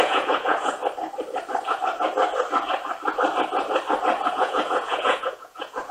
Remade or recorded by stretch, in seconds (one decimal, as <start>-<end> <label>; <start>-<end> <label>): 0.0-0.8 remade; 0.8-4.3 recorded; 4.3-5.9 remade